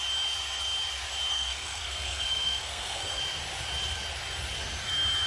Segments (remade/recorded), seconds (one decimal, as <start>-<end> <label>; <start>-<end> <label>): 0.0-1.3 recorded; 1.3-3.2 remade; 3.2-5.3 recorded